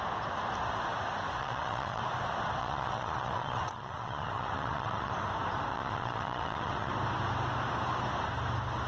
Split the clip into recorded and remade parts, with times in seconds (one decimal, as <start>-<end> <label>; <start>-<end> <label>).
0.0-1.4 recorded; 1.4-2.0 remade; 2.0-2.6 recorded; 2.6-5.1 remade; 5.1-5.7 recorded; 5.7-6.9 remade; 6.9-8.9 recorded